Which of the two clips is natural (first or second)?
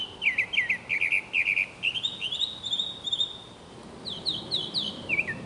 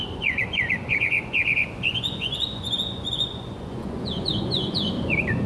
first